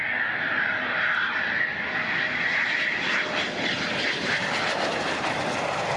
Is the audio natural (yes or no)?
yes